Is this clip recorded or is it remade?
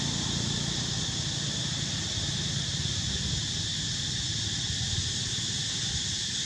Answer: recorded